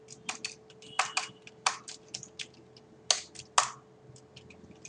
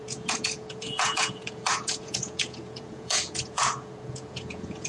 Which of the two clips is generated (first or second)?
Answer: second